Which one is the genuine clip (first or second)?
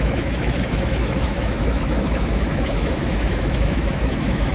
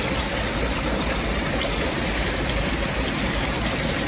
second